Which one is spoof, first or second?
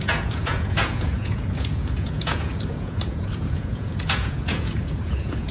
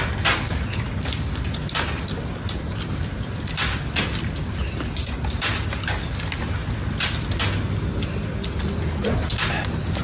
first